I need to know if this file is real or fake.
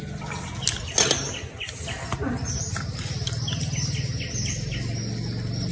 real